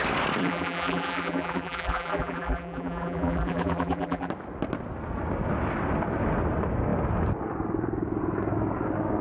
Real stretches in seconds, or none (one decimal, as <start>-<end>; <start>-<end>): 0.0-0.4; 4.3-9.2